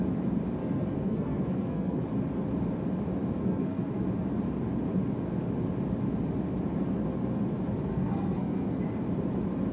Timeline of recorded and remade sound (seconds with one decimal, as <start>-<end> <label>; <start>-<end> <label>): 0.0-0.6 recorded; 0.6-2.0 remade; 2.0-3.4 recorded; 3.4-4.0 remade; 4.0-7.9 recorded; 7.9-8.8 remade; 8.8-9.7 recorded